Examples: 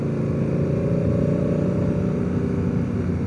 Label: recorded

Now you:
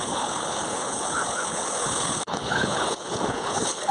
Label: remade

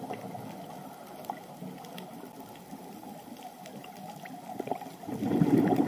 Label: recorded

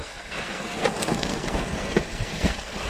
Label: remade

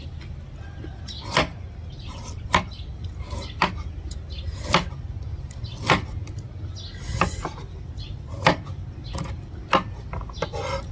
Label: recorded